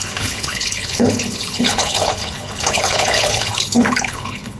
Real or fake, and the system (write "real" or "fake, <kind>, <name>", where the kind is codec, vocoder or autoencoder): fake, codec, HILCodec